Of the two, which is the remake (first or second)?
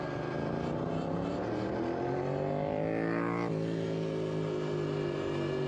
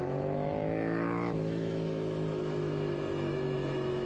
second